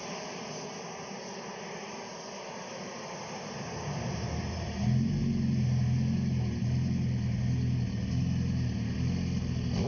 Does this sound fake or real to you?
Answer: real